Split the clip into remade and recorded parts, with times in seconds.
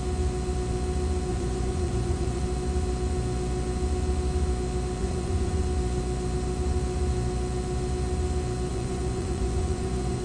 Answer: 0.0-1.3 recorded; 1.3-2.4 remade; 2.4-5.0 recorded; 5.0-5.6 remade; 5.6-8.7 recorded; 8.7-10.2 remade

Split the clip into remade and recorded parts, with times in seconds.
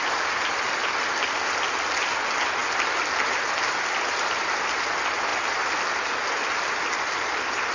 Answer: 0.0-7.7 recorded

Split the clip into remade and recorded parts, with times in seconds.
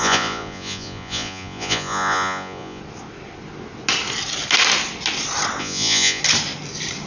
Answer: 0.0-2.8 remade; 2.8-5.6 recorded; 5.6-6.2 remade; 6.2-7.1 recorded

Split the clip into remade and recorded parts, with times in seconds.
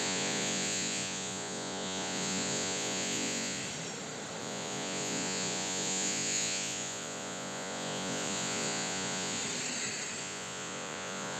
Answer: 0.0-3.6 remade; 3.6-4.4 recorded; 4.4-9.4 remade; 9.4-10.2 recorded; 10.2-11.4 remade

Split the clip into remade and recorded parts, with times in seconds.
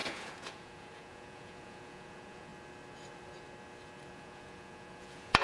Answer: 0.0-2.5 remade; 2.5-4.1 recorded; 4.1-5.4 remade